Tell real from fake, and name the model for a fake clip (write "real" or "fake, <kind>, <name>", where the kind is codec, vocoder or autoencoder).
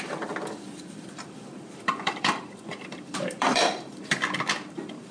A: fake, vocoder, BigVGAN v2